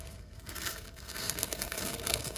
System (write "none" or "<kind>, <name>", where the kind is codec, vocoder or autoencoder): codec, SNAC